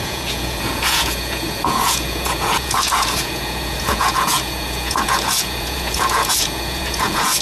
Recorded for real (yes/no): no